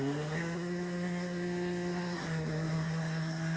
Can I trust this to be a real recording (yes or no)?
no